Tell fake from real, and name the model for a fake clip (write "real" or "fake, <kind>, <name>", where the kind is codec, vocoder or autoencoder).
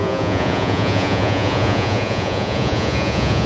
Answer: fake, vocoder, Vocos